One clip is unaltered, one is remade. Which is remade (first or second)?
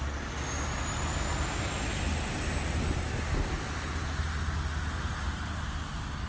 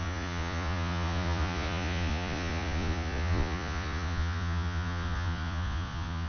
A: second